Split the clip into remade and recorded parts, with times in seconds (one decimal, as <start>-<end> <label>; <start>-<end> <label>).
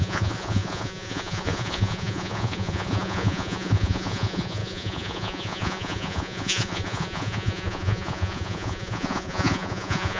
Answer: 0.0-10.2 remade